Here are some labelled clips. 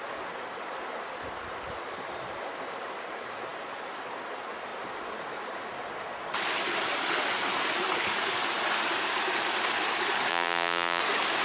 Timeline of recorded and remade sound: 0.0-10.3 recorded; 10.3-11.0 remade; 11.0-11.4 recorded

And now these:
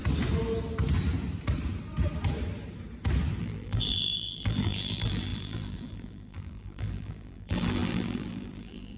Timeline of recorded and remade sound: 0.0-3.4 recorded; 3.4-9.0 remade

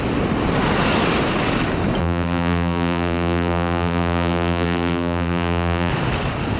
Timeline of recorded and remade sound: 0.0-2.0 recorded; 2.0-5.9 remade; 5.9-6.6 recorded